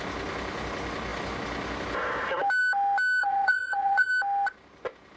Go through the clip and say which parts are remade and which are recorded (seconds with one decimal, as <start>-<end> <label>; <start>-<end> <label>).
0.0-3.2 recorded; 3.2-4.1 remade; 4.1-5.2 recorded